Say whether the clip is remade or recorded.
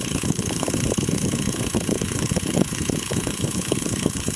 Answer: remade